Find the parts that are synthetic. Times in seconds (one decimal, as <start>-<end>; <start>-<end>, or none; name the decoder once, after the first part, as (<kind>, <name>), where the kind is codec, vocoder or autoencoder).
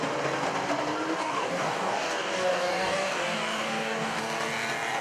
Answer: 1.2-4.2 (codec, DAC)